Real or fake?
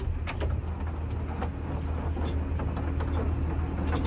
real